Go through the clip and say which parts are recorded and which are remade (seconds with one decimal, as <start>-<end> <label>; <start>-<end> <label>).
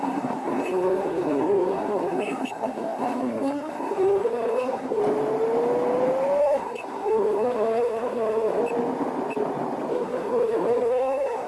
0.0-5.0 remade; 5.0-6.4 recorded; 6.4-8.6 remade; 8.6-9.9 recorded; 9.9-11.5 remade